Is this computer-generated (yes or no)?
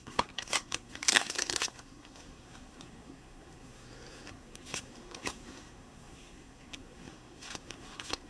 yes